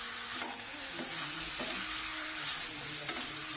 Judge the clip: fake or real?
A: real